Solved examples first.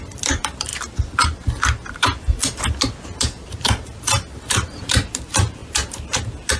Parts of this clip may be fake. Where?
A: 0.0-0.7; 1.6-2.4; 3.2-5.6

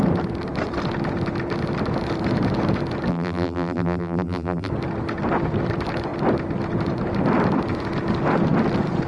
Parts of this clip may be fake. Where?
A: 3.1-4.7

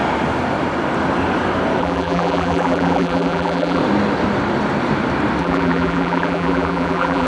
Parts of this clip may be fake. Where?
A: 1.8-3.8; 5.4-7.3

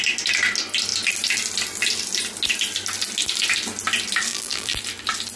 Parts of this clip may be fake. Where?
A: 4.3-4.8

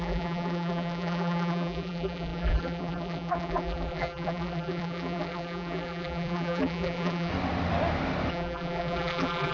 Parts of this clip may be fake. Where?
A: 0.0-7.3; 8.3-9.5

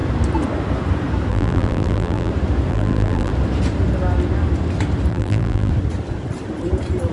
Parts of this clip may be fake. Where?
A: 1.3-2.3; 2.7-3.3; 5.1-5.7

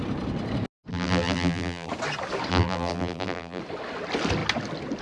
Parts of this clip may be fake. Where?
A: 0.9-1.9; 2.5-3.6

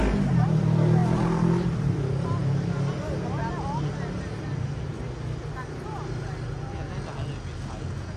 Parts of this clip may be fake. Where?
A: none